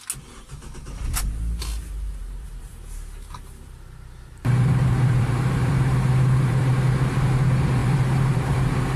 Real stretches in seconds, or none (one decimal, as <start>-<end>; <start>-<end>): 0.0-2.2; 6.7-7.8; 8.6-9.0